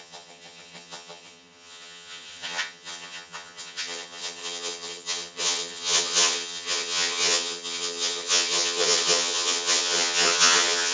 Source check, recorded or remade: remade